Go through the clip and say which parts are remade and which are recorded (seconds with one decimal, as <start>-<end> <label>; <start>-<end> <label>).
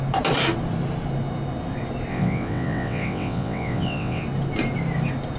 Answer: 0.0-2.1 recorded; 2.1-4.2 remade; 4.2-5.4 recorded